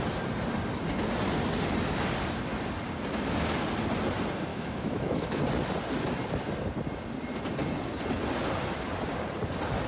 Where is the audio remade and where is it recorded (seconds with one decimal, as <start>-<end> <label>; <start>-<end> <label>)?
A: 0.0-4.5 recorded; 4.5-5.4 remade; 5.4-9.9 recorded